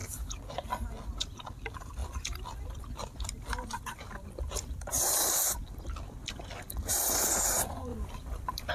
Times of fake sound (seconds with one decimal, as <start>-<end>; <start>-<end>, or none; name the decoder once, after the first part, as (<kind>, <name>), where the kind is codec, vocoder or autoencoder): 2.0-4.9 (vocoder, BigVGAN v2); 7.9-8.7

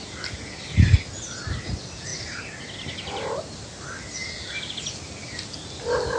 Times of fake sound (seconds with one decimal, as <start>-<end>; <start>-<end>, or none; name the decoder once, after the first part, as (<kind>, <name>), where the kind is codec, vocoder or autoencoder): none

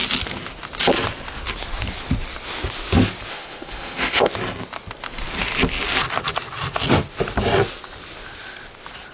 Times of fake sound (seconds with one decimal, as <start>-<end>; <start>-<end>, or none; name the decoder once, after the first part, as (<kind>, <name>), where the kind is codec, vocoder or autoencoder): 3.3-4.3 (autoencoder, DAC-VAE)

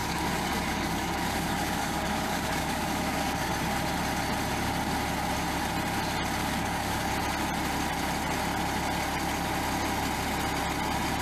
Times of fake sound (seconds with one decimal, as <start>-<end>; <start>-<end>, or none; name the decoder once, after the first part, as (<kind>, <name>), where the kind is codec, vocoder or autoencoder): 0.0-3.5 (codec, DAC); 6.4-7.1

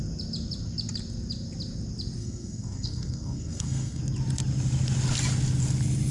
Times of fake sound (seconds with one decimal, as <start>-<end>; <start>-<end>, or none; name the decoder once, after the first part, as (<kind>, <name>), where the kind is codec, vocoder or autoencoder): 2.2-4.0 (codec, SNAC)